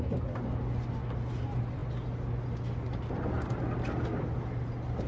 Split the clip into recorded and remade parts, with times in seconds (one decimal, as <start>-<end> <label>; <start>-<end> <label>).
0.0-5.1 recorded

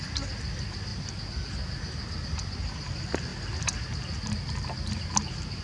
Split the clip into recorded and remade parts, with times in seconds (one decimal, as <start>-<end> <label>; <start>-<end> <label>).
0.0-5.6 recorded

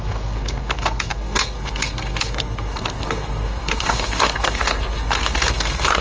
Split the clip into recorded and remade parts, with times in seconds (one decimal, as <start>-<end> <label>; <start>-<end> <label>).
0.0-6.0 remade

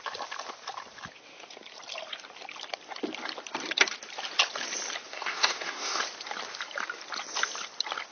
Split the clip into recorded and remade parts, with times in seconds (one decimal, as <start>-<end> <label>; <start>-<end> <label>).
0.0-5.1 recorded; 5.1-6.0 remade; 6.0-8.1 recorded

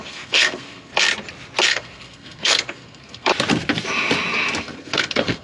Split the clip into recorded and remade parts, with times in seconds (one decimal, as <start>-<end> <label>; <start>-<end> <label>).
0.0-0.9 remade; 0.9-1.7 recorded; 1.7-3.3 remade; 3.3-4.6 recorded; 4.6-5.4 remade

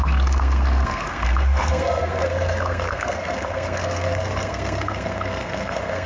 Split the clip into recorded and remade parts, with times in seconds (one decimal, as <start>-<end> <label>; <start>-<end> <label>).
0.0-6.1 remade

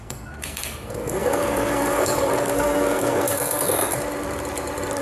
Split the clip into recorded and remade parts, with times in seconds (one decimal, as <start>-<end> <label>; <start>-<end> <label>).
0.0-4.0 remade; 4.0-5.0 recorded